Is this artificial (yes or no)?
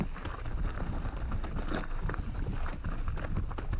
no